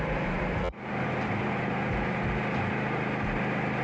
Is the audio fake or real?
real